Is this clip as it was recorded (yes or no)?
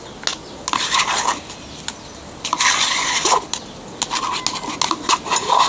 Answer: yes